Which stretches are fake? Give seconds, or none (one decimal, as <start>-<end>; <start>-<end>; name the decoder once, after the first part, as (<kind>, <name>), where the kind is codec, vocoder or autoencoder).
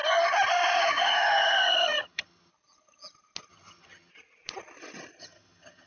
0.8-2.5 (vocoder, HiFi-GAN); 3.5-4.1; 5.2-5.9